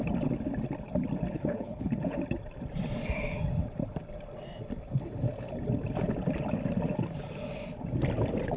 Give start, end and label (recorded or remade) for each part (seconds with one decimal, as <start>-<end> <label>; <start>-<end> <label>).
0.0-1.3 recorded; 1.3-2.2 remade; 2.2-8.6 recorded